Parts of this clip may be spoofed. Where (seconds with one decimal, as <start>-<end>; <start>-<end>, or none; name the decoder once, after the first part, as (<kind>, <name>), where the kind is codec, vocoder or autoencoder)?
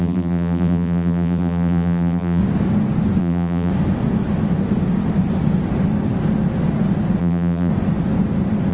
0.0-2.4 (vocoder, BigVGAN v2); 3.2-3.7; 7.2-7.7